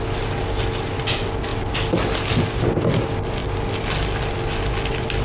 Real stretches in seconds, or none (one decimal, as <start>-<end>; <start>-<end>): 0.0-5.2